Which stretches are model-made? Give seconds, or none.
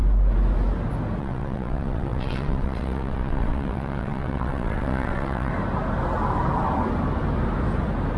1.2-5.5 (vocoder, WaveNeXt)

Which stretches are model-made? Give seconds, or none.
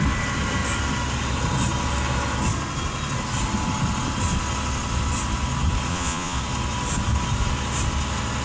5.9-6.4 (vocoder, Vocos)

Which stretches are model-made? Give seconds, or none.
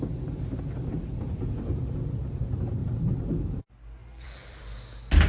4.0-4.6 (vocoder, BigVGAN v2)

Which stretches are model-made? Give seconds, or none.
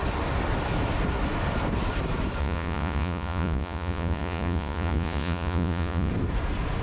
2.4-6.1 (vocoder, Vocos)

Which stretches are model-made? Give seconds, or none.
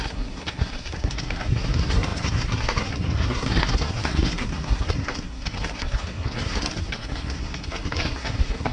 0.0-8.7 (codec, SNAC)